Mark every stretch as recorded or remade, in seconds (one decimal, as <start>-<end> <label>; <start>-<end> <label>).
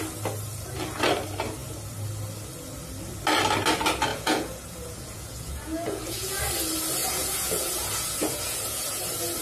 0.0-4.1 recorded; 4.1-6.4 remade; 6.4-7.0 recorded; 7.0-9.0 remade; 9.0-9.4 recorded